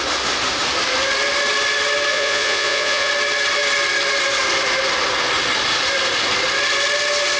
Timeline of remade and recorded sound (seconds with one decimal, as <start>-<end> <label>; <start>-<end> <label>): 0.0-2.1 recorded; 2.1-3.1 remade; 3.1-7.4 recorded